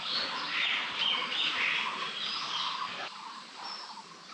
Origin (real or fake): real